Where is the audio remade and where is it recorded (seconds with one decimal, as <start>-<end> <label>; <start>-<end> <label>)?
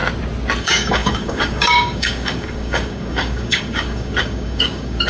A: 0.0-0.6 recorded; 0.6-5.1 remade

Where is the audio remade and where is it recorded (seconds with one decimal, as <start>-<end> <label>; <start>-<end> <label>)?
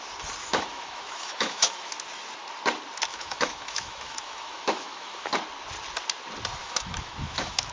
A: 0.0-0.4 recorded; 0.4-1.9 remade; 1.9-3.1 recorded; 3.1-5.3 remade; 5.3-6.6 recorded; 6.6-7.7 remade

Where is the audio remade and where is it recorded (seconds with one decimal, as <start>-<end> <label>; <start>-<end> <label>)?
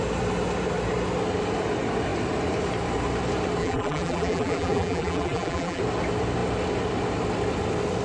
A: 0.0-3.6 recorded; 3.6-5.8 remade; 5.8-8.0 recorded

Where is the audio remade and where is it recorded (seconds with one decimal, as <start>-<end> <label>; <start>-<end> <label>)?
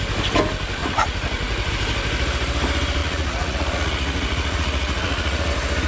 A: 0.0-0.8 recorded; 0.8-1.7 remade; 1.7-3.0 recorded; 3.0-5.5 remade; 5.5-5.9 recorded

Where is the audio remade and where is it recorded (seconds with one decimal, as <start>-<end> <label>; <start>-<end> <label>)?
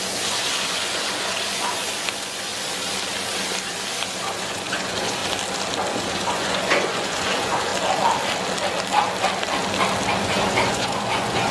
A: 0.0-2.5 remade; 2.5-4.2 recorded; 4.2-5.2 remade; 5.2-5.9 recorded; 5.9-7.7 remade; 7.7-10.2 recorded; 10.2-11.5 remade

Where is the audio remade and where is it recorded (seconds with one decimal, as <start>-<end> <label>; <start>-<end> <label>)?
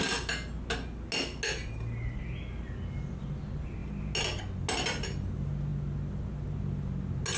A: 0.0-7.4 recorded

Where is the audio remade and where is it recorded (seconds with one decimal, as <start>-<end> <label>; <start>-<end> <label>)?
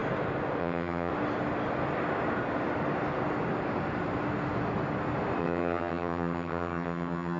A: 0.0-0.6 recorded; 0.6-1.1 remade; 1.1-5.4 recorded; 5.4-7.4 remade